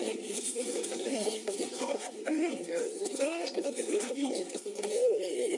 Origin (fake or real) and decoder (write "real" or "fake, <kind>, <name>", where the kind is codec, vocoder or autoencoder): fake, codec, SNAC